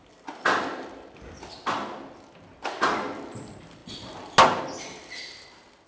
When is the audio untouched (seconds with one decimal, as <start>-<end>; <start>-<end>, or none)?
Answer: 0.0-5.9